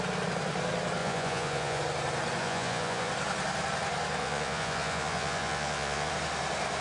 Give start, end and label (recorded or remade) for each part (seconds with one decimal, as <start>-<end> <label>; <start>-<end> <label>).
0.0-1.0 recorded; 1.0-1.8 remade; 1.8-2.4 recorded; 2.4-3.1 remade; 3.1-4.2 recorded; 4.2-6.1 remade; 6.1-6.8 recorded